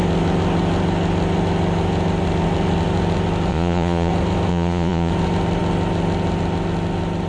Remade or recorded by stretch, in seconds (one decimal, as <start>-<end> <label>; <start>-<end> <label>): 0.0-3.5 recorded; 3.5-4.1 remade; 4.1-4.5 recorded; 4.5-5.1 remade; 5.1-7.3 recorded